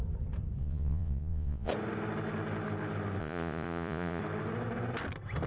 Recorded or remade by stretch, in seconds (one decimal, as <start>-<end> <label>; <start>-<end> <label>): 0.0-0.6 recorded; 0.6-1.7 remade; 1.7-3.2 recorded; 3.2-4.2 remade; 4.2-5.5 recorded